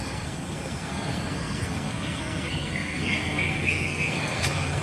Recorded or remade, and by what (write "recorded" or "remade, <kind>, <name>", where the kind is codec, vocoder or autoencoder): remade, codec, SNAC